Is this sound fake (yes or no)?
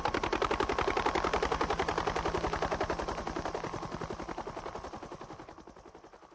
no